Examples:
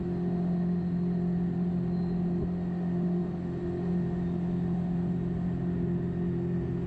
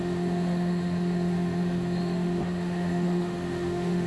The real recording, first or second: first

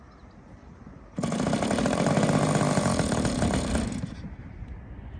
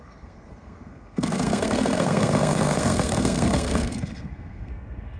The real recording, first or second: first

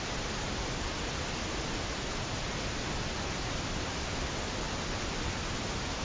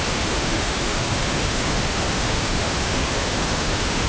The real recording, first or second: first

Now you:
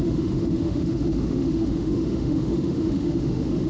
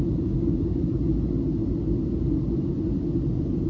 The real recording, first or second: second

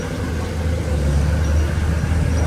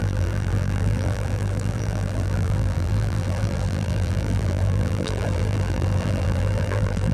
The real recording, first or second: first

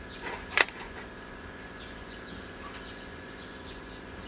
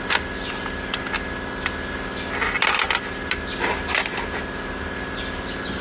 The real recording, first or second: second